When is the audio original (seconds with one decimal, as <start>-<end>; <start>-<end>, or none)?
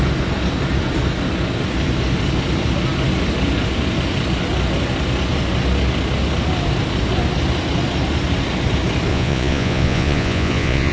0.0-9.1